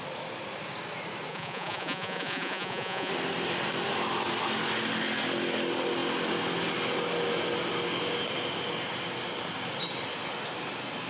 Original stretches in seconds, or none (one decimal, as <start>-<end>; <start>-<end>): 0.0-1.3; 3.1-11.1